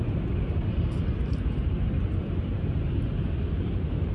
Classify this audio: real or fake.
real